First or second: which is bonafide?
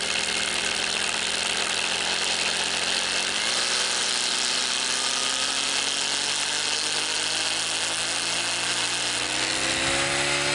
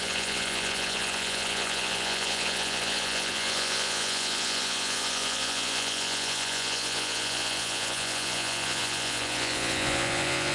first